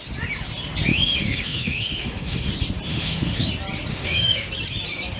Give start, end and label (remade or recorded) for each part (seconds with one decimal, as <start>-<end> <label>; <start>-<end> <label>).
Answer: 0.0-0.9 recorded; 0.9-2.5 remade; 2.5-2.9 recorded; 2.9-3.5 remade; 3.5-3.9 recorded; 3.9-4.5 remade; 4.5-5.2 recorded